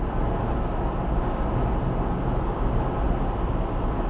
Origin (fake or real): real